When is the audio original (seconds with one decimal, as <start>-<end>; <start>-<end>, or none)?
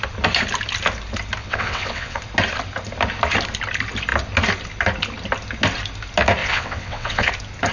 0.0-1.4; 2.2-6.4; 7.3-7.7